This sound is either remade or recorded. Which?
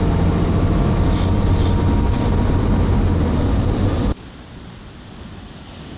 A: recorded